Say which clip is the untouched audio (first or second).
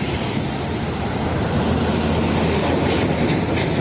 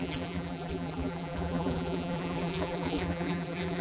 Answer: first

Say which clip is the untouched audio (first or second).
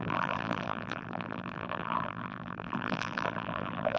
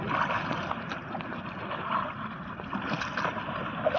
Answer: second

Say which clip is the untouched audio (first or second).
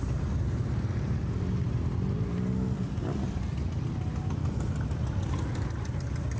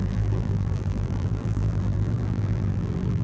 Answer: first